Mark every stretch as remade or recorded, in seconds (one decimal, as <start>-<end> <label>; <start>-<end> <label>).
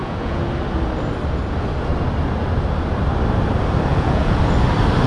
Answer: 0.0-0.5 remade; 0.5-3.9 recorded; 3.9-4.4 remade; 4.4-5.1 recorded